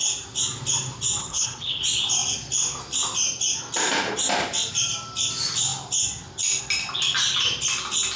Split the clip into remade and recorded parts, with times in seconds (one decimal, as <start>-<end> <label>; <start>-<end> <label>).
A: 0.0-1.2 recorded; 1.2-1.8 remade; 1.8-8.2 recorded